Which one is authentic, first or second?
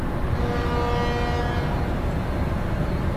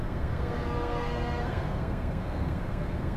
first